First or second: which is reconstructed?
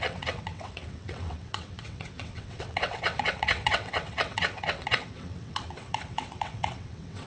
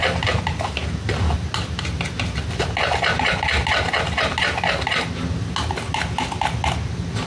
first